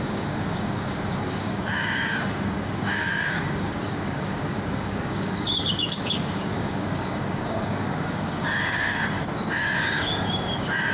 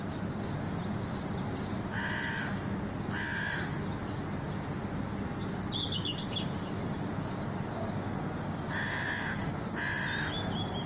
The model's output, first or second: first